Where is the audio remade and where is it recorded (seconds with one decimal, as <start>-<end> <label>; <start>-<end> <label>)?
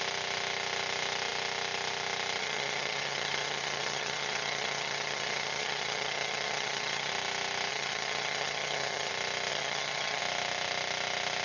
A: 0.0-2.4 recorded; 2.4-7.1 remade; 7.1-7.7 recorded; 7.7-9.1 remade; 9.1-9.5 recorded; 9.5-10.2 remade; 10.2-11.4 recorded